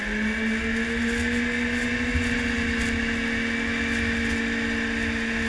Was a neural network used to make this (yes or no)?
no